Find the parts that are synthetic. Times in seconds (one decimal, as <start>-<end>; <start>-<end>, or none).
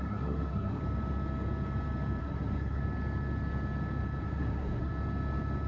0.0-0.8; 2.2-2.8; 4.2-4.9